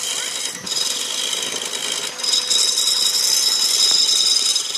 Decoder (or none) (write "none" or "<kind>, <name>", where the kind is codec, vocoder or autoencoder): none